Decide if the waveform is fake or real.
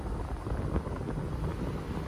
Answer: real